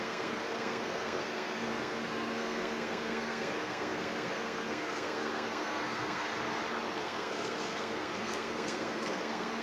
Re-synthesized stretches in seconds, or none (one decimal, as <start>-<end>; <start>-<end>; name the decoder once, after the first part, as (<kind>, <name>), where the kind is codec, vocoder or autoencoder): 0.0-6.3 (codec, SNAC); 7.0-9.6